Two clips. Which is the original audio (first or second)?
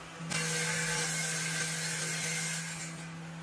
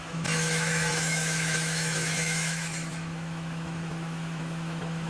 first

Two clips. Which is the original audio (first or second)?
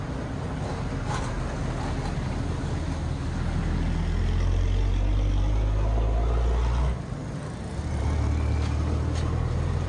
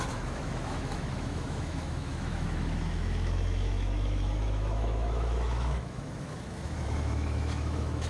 first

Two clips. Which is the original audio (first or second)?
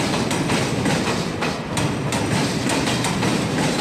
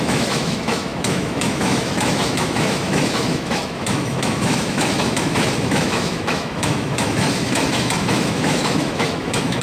first